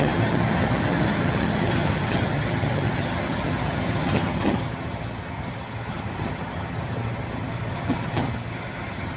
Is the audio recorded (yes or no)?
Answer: no